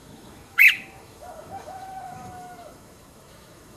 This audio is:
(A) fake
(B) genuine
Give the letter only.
A